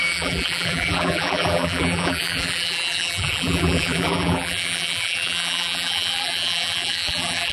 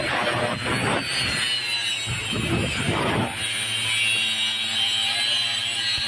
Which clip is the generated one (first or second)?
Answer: first